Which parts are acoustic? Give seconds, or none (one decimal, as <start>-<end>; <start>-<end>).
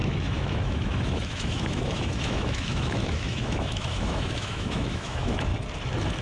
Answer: 5.5-6.2